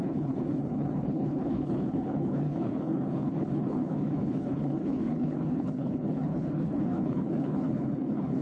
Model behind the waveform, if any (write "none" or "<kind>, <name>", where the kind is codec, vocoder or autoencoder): codec, HILCodec